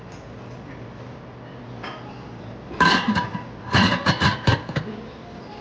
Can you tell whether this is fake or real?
real